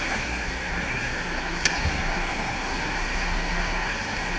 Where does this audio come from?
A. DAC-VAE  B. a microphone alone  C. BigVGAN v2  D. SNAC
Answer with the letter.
D